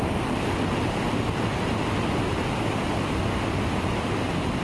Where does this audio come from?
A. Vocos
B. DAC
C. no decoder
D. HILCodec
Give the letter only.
C